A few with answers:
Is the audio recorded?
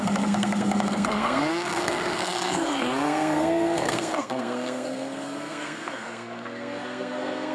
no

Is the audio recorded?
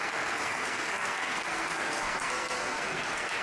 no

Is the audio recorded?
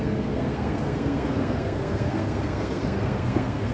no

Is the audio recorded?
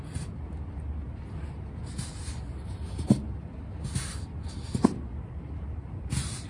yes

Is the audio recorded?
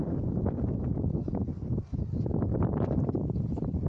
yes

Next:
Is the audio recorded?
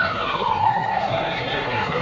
no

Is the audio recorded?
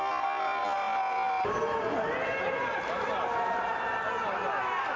yes